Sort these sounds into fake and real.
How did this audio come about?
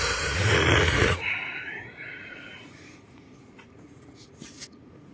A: fake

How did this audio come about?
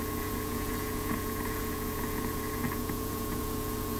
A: fake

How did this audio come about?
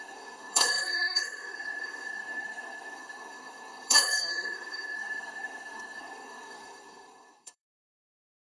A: fake